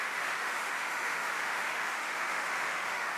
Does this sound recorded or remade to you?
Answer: remade